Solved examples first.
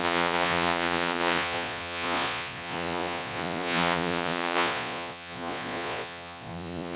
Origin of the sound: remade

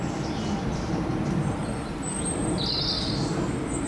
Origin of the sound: recorded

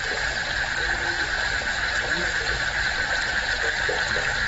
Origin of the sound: recorded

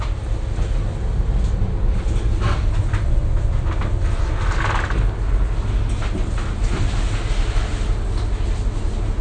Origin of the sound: recorded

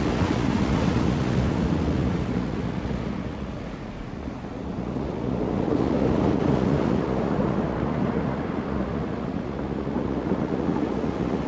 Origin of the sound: remade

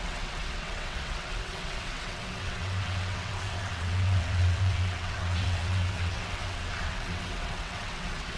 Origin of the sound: remade